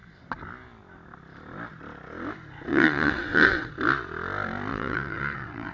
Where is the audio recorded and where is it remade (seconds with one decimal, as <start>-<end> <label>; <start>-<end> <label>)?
0.0-2.7 recorded; 2.7-3.7 remade; 3.7-4.7 recorded; 4.7-5.7 remade